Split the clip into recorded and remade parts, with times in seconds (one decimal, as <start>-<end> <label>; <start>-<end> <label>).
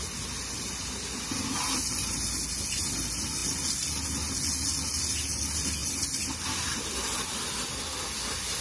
0.0-8.6 recorded